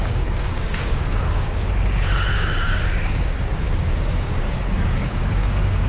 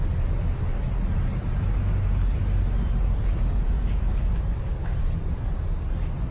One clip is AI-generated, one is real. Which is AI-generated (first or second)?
first